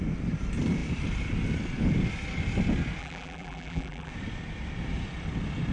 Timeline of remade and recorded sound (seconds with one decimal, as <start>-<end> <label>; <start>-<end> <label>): 0.0-3.0 recorded; 3.0-4.1 remade; 4.1-5.7 recorded